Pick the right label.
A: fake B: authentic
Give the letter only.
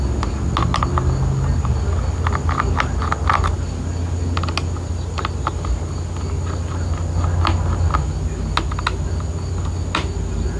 B